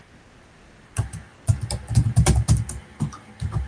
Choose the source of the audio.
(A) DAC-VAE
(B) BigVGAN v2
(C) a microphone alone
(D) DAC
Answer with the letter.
C